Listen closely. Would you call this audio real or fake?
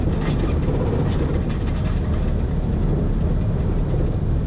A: real